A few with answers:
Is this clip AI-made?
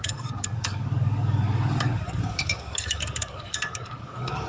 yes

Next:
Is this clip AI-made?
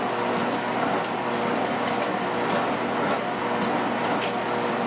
no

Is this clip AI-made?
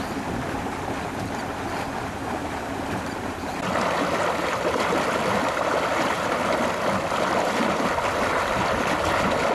no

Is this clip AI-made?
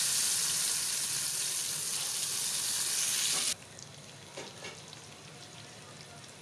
no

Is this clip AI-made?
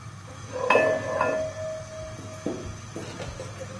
no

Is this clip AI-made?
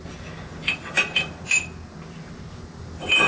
no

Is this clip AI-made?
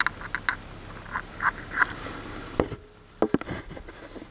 no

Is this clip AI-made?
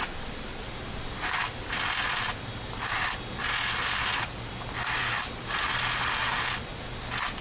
no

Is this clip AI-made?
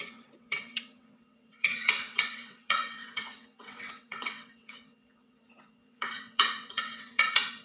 yes